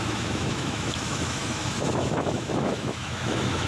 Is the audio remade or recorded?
remade